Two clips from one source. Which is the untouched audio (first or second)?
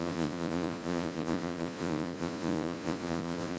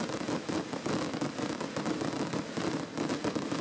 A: second